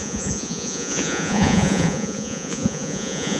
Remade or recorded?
remade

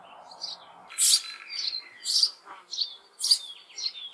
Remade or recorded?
recorded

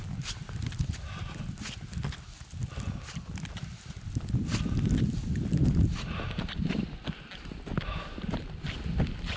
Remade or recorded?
recorded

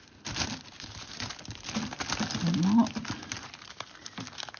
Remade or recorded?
recorded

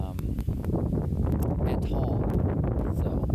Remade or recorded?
recorded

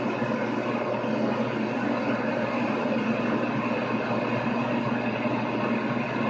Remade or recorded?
recorded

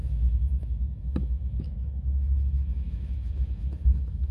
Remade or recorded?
remade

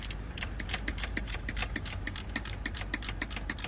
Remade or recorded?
remade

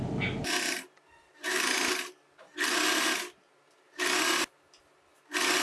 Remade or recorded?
recorded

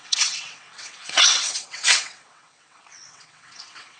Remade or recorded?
remade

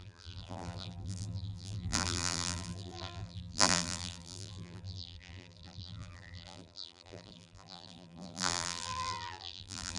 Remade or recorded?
remade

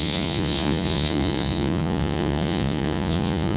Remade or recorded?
remade